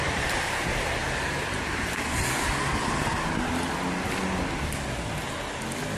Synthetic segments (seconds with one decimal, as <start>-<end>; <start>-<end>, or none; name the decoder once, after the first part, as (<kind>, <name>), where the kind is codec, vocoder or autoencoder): none